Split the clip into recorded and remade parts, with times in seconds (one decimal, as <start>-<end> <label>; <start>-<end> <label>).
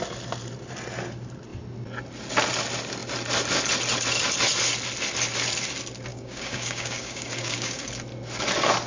0.0-6.1 recorded; 6.1-7.9 remade; 7.9-8.9 recorded